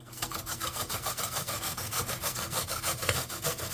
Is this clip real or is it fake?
fake